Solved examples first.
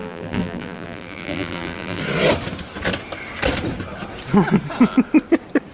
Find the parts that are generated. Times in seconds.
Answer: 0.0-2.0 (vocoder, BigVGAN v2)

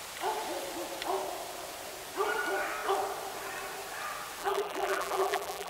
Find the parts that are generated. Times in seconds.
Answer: 4.4-5.7 (vocoder, BigVGAN v2)

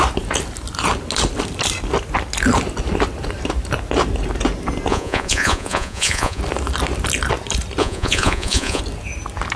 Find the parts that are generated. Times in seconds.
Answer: 4.9-6.4 (vocoder, Vocos); 7.8-8.8

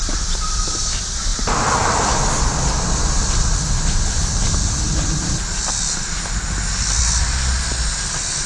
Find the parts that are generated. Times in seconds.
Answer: none

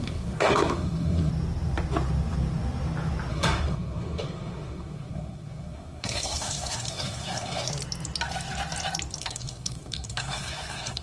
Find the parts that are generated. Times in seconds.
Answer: 0.0-1.3 (codec, SNAC); 3.3-7.7; 9.2-11.0

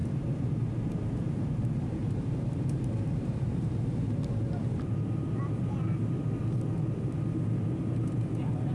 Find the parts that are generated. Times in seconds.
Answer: 0.0-1.5 (vocoder, BigVGAN v2); 2.0-5.4

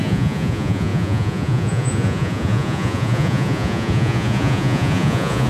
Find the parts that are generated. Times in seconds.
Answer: 0.0-5.5 (vocoder, Vocos)